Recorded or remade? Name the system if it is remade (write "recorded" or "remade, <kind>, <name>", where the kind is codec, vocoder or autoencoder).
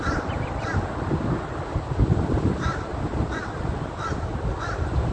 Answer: recorded